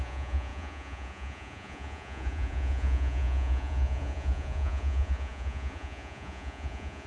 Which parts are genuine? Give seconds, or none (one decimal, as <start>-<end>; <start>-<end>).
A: none